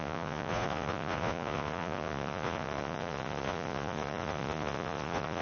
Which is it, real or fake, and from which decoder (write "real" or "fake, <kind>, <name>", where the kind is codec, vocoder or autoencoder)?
fake, vocoder, Vocos